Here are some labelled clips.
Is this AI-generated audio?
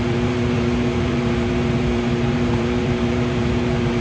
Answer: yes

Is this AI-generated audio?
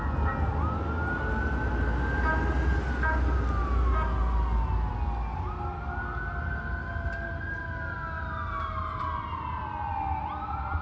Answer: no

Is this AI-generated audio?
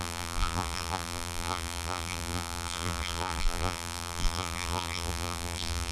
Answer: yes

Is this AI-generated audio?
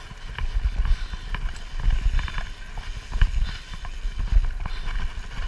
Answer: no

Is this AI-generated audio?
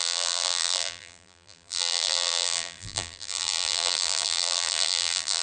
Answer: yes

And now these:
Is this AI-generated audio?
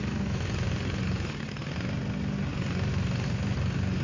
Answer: no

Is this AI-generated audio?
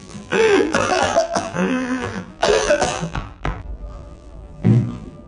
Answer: yes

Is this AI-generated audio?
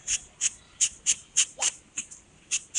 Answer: no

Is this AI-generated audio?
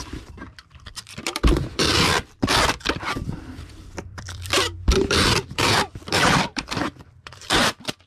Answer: yes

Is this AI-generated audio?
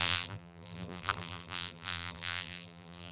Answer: yes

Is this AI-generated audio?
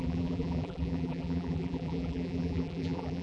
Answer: yes